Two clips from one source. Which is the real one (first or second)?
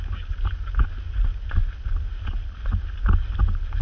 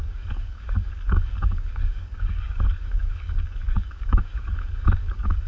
first